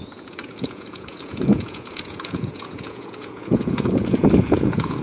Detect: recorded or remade remade